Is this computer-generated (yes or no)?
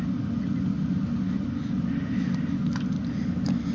no